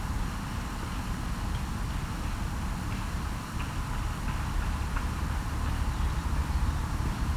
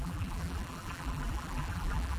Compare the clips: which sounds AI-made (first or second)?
second